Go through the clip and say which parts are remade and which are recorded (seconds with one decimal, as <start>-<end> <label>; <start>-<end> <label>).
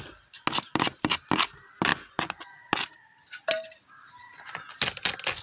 0.0-5.4 recorded